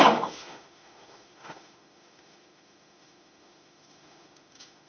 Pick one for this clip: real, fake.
fake